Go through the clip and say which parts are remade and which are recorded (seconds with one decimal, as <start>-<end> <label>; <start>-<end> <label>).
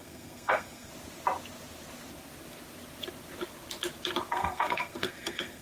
0.0-0.9 remade; 0.9-4.3 recorded; 4.3-5.6 remade